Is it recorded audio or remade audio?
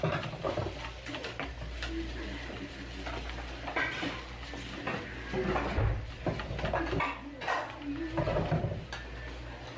recorded